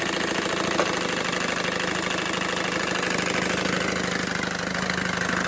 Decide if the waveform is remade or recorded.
recorded